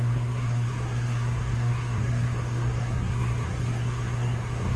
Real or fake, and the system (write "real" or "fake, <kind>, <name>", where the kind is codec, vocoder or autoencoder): fake, codec, SNAC